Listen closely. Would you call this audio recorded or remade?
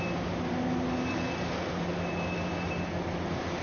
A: recorded